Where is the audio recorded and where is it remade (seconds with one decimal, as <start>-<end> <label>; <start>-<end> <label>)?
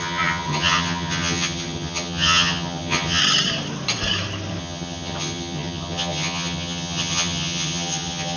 0.0-3.2 remade; 3.2-4.6 recorded; 4.6-8.4 remade